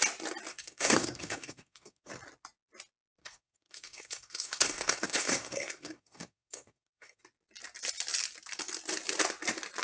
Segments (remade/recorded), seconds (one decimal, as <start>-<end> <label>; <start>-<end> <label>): 0.0-0.5 recorded; 0.5-2.1 remade; 2.1-3.2 recorded; 3.2-7.2 remade; 7.2-9.8 recorded